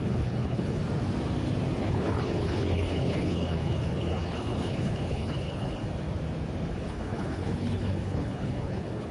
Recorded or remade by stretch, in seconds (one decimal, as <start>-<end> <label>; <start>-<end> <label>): 0.0-0.8 remade; 0.8-1.8 recorded; 1.8-5.8 remade; 5.8-6.7 recorded; 6.7-9.1 remade